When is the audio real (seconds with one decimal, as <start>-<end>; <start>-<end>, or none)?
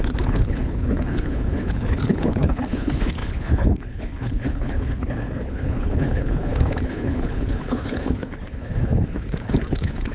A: none